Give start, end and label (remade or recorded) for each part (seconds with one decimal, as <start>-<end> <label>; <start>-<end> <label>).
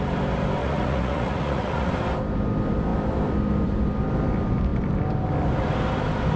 0.0-0.6 recorded; 0.6-1.9 remade; 1.9-6.4 recorded